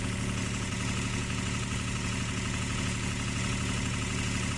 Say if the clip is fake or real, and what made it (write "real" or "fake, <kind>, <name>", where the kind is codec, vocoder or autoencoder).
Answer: fake, vocoder, Vocos